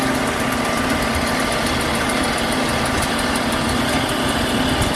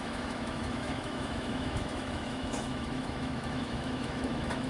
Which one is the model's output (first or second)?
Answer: second